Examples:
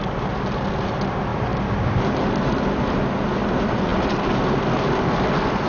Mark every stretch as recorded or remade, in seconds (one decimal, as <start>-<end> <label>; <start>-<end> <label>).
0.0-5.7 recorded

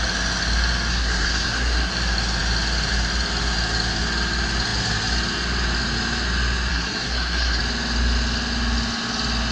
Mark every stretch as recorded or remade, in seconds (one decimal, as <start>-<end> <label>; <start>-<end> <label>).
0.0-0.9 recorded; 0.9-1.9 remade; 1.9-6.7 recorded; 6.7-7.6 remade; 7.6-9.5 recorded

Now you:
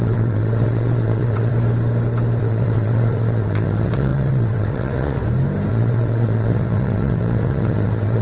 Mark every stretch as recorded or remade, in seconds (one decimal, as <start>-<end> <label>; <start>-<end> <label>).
0.0-1.5 remade; 1.5-2.4 recorded; 2.4-5.2 remade; 5.2-5.7 recorded; 5.7-8.2 remade

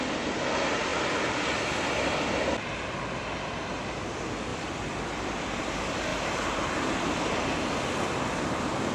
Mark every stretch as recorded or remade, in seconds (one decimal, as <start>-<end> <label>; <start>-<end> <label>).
0.0-0.9 recorded; 0.9-1.8 remade; 1.8-4.5 recorded; 4.5-5.6 remade; 5.6-6.1 recorded; 6.1-7.8 remade; 7.8-8.9 recorded